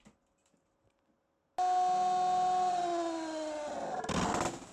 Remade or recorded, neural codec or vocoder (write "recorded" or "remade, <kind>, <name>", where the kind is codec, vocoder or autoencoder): recorded